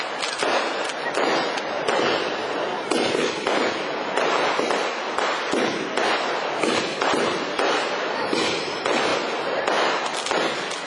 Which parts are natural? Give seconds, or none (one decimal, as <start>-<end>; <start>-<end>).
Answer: 0.0-10.9